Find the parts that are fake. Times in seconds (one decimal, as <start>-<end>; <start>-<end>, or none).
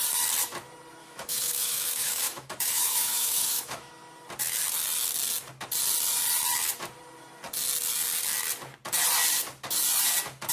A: 1.0-3.9